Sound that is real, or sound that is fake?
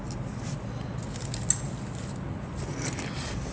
real